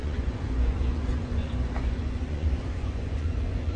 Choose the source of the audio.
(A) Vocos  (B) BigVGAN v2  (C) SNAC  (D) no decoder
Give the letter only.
A